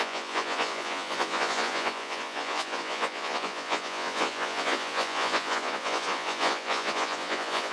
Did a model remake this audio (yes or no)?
yes